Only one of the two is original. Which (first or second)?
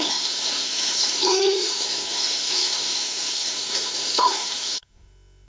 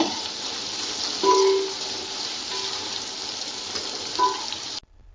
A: second